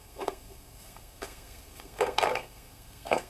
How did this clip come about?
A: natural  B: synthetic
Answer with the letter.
B